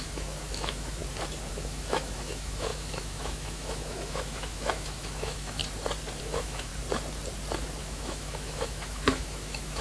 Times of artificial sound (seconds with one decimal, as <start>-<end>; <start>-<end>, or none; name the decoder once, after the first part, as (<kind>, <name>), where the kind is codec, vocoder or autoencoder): 0.0-1.0 (autoencoder, DAC-VAE); 1.5-5.6; 6.2-6.7; 7.8-9.8